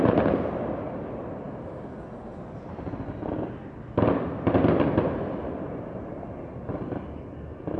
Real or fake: real